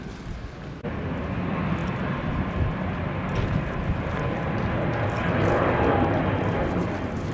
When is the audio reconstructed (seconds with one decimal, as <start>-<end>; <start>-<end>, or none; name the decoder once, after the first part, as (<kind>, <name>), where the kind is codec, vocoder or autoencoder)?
none